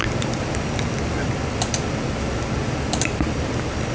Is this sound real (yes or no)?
yes